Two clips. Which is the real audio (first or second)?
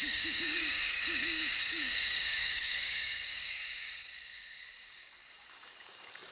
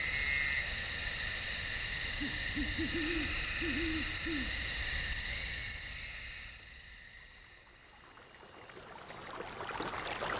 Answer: second